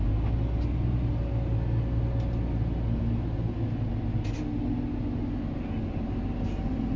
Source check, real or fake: real